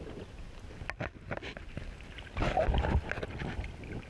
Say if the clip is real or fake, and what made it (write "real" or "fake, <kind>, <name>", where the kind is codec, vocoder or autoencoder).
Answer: real